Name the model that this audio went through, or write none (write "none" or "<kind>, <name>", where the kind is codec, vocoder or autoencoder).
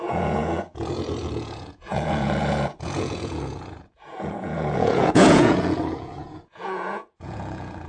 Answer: vocoder, Vocos